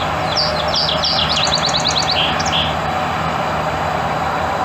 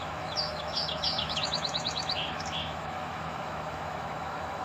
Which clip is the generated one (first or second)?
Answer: second